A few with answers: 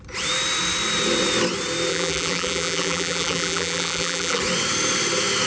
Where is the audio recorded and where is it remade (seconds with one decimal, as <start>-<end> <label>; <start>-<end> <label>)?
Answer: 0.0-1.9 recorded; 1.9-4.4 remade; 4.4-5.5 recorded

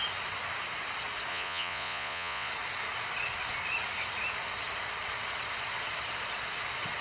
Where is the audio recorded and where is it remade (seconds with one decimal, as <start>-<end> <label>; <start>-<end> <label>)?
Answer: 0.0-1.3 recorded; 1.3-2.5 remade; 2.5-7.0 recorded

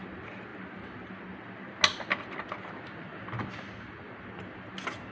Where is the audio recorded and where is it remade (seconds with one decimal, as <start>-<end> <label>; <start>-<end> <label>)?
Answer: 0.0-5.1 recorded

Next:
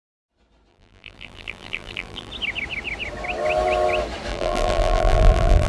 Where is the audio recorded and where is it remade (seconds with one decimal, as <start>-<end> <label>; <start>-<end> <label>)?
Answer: 0.0-0.7 recorded; 0.7-2.3 remade; 2.3-4.3 recorded; 4.3-5.7 remade

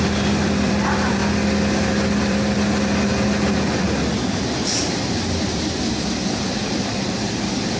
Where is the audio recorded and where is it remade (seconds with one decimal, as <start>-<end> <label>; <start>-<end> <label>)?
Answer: 0.0-1.2 remade; 1.2-2.2 recorded; 2.2-3.1 remade; 3.1-4.3 recorded; 4.3-7.8 remade

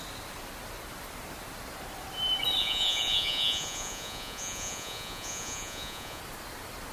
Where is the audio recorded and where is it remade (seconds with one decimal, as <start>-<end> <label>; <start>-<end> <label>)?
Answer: 0.0-2.6 recorded; 2.6-6.2 remade; 6.2-6.9 recorded